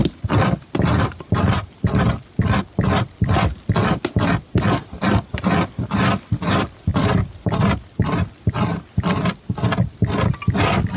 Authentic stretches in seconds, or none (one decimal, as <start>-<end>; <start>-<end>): 0.0-6.9; 7.7-11.0